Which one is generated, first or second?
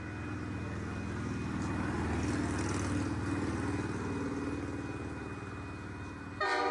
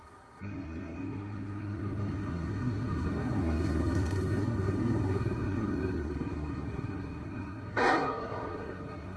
second